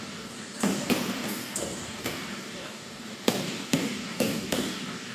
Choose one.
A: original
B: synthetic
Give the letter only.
B